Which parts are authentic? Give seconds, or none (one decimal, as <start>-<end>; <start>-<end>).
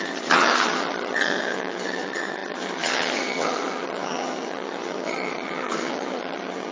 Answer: none